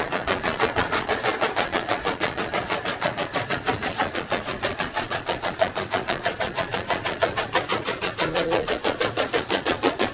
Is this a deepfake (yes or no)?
yes